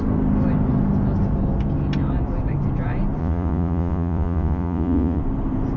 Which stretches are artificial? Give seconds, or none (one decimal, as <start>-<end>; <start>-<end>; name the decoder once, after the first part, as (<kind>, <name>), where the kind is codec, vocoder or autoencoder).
3.2-5.2 (vocoder, Vocos)